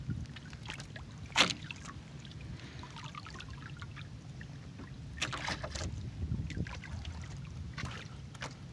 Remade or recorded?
recorded